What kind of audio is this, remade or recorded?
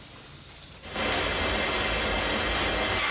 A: recorded